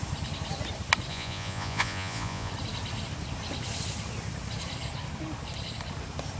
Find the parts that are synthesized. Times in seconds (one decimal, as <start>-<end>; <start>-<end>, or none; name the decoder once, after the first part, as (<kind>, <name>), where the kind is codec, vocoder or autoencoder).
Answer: 1.1-2.5 (vocoder, Vocos)